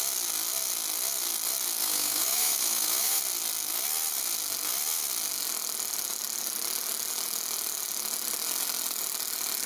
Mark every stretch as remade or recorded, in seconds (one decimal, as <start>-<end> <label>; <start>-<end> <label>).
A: 0.0-1.8 recorded; 1.8-3.2 remade; 3.2-9.7 recorded